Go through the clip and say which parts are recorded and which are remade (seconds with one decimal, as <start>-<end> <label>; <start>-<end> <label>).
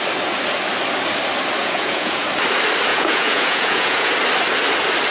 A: 0.0-1.6 recorded; 1.6-2.2 remade; 2.2-2.9 recorded; 2.9-4.1 remade; 4.1-5.1 recorded